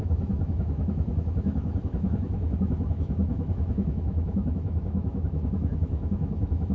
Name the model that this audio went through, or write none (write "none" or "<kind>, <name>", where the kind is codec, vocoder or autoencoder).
autoencoder, DAC-VAE